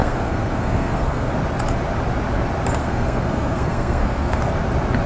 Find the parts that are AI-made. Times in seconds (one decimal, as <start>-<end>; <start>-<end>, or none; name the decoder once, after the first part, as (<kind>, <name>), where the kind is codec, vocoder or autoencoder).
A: 0.0-1.3 (codec, SNAC); 2.8-4.5